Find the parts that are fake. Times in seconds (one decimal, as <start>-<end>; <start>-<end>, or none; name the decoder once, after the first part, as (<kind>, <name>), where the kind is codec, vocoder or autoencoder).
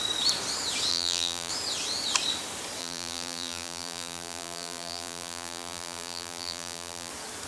0.9-1.5 (vocoder, BigVGAN v2); 2.8-7.1